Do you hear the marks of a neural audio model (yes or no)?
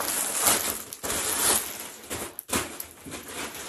no